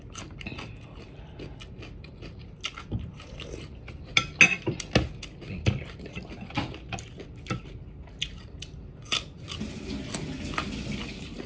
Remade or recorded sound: recorded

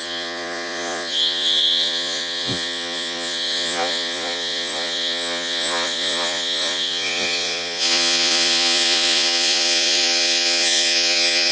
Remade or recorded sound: remade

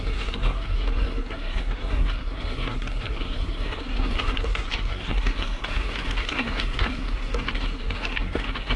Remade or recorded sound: remade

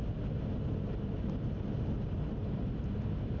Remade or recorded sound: recorded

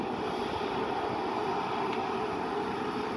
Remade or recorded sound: recorded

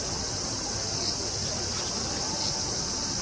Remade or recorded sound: recorded